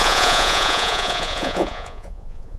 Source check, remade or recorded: remade